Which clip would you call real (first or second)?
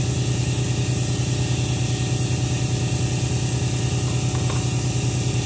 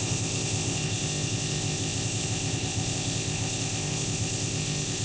first